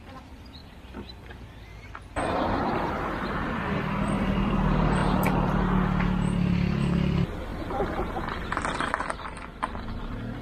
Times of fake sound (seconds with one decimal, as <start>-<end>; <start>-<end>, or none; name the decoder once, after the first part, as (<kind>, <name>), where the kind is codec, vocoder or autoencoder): 0.0-5.0 (vocoder, BigVGAN v2); 7.1-10.4